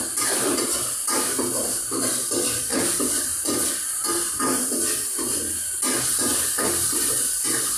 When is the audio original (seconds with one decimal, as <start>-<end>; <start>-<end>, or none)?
0.0-7.8